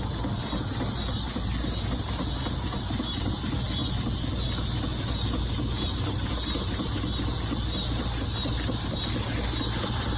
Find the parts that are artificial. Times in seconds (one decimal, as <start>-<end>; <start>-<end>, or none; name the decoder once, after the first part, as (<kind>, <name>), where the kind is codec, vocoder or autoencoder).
none